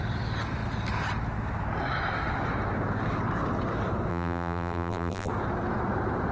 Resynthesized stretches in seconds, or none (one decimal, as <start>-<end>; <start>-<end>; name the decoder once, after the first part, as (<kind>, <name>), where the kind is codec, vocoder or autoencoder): 4.1-5.3 (vocoder, BigVGAN v2)